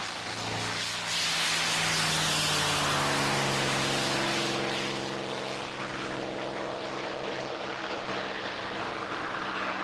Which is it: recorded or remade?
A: recorded